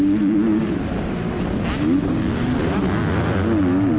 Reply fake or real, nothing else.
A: real